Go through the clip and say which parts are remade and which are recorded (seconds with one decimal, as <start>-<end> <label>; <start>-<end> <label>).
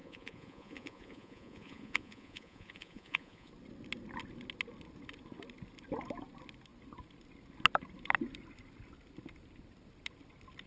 0.0-3.5 remade; 3.5-10.7 recorded